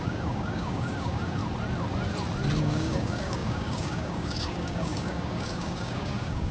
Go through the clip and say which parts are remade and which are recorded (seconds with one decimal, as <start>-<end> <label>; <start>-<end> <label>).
0.0-1.4 remade; 1.4-2.6 recorded; 2.6-6.5 remade